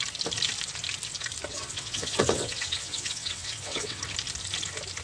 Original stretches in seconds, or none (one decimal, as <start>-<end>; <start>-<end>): 0.0-1.5; 4.0-5.0